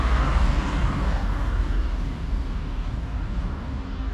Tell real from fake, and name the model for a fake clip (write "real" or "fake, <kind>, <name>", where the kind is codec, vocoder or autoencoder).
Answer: fake, codec, DAC